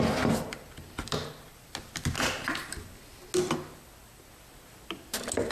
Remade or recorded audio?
recorded